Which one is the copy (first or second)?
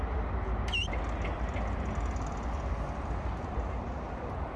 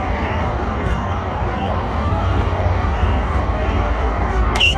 second